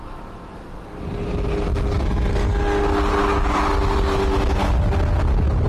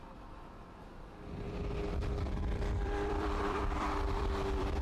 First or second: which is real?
first